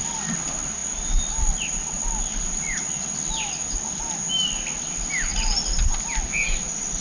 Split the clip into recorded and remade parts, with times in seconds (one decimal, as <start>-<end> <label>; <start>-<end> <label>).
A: 0.0-7.0 recorded